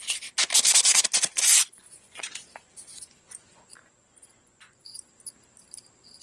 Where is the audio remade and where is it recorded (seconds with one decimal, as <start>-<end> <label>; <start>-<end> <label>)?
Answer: 0.0-1.5 recorded; 1.5-5.1 remade; 5.1-6.2 recorded